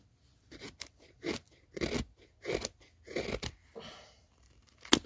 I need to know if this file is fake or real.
real